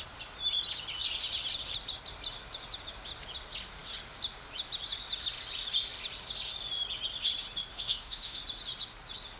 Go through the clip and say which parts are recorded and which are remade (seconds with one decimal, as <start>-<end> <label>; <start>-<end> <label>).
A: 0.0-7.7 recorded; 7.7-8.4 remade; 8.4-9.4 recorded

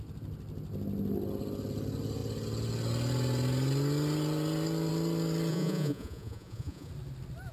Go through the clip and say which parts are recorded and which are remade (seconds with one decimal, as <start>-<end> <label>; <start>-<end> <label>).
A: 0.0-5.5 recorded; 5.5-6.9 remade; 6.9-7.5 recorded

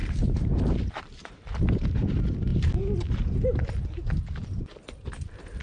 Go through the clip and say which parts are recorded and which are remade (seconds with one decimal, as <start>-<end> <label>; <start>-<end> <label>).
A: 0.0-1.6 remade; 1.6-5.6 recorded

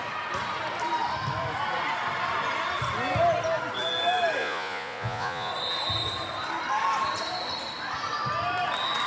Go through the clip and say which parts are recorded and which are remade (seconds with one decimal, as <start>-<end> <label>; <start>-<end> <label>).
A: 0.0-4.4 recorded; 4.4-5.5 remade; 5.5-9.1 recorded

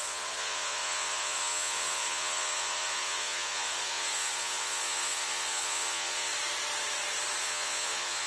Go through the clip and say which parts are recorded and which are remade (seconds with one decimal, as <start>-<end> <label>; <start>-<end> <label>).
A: 0.0-6.3 remade; 6.3-7.4 recorded; 7.4-8.3 remade

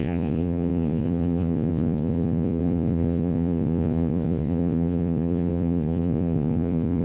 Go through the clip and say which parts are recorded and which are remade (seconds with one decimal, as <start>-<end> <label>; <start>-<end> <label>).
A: 0.0-7.0 remade